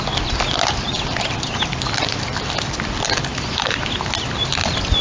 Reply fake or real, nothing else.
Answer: real